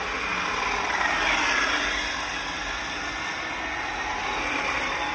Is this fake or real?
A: real